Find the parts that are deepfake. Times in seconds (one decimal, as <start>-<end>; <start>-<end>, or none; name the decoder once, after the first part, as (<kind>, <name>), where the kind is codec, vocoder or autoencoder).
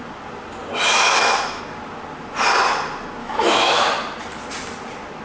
0.9-1.6 (autoencoder, DAC-VAE); 3.2-3.8